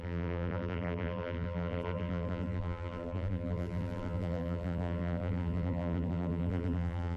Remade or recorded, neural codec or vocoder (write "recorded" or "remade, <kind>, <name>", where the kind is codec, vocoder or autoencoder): remade, vocoder, BigVGAN v2